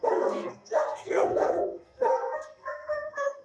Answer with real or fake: fake